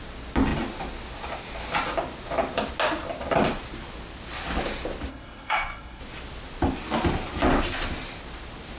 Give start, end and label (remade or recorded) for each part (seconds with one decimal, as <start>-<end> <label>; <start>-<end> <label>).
0.0-5.1 recorded; 5.1-6.0 remade; 6.0-8.8 recorded